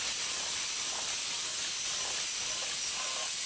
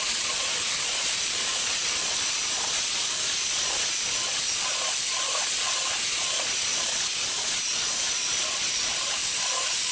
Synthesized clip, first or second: second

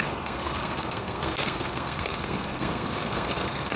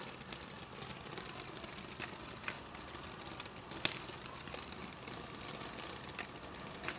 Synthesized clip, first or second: first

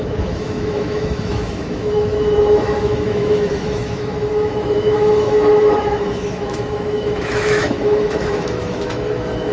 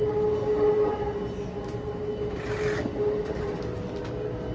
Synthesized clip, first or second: first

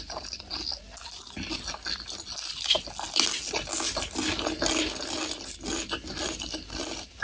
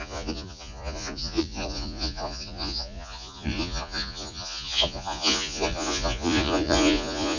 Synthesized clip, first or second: second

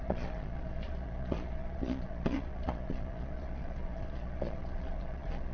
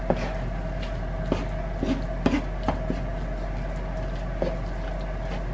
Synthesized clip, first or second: first